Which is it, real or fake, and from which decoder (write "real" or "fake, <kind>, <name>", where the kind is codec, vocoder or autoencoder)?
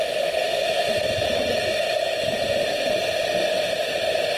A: real